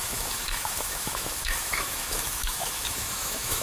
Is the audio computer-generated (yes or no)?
yes